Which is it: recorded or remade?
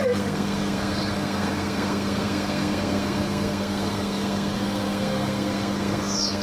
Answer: remade